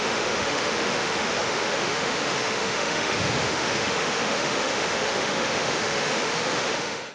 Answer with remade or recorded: remade